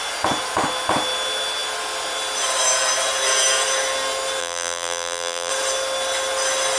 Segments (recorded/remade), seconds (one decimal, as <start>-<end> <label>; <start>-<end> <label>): 0.0-4.4 recorded; 4.4-5.5 remade; 5.5-6.8 recorded